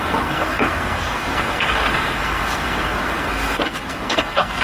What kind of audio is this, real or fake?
fake